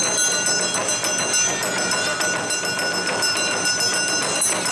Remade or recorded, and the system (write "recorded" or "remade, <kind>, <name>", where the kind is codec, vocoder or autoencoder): recorded